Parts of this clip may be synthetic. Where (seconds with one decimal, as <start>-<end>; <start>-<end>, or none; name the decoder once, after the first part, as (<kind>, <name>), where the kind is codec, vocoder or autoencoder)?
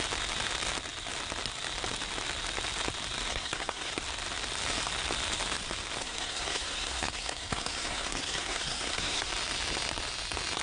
3.3-3.9 (codec, SNAC); 6.0-9.3